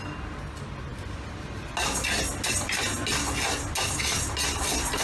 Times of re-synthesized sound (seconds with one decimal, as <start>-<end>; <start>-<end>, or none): none